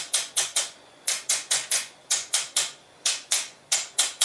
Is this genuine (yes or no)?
no